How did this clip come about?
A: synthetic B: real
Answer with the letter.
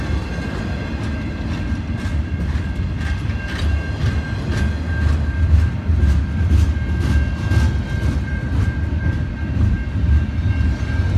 B